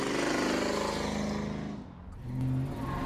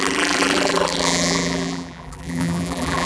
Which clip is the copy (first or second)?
second